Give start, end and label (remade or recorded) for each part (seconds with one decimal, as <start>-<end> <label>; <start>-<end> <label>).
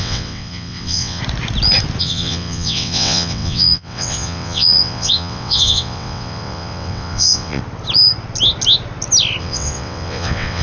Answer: 0.0-1.2 remade; 1.2-2.0 recorded; 2.0-7.6 remade; 7.6-9.4 recorded; 9.4-10.6 remade